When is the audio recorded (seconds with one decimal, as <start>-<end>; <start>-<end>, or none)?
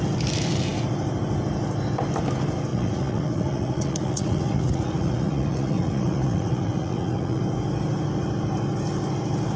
0.0-2.7; 7.4-9.6